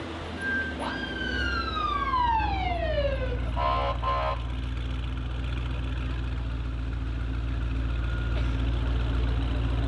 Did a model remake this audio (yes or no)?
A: no